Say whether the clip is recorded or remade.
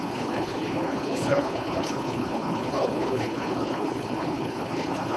remade